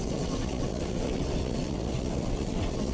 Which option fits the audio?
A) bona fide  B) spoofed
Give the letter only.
B